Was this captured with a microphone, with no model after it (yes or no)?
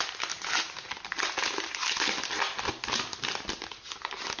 yes